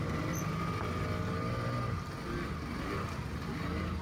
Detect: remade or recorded recorded